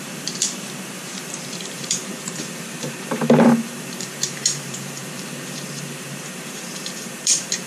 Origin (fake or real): fake